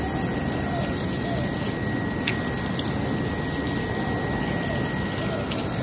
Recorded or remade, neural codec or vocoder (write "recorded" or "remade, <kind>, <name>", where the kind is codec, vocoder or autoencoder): recorded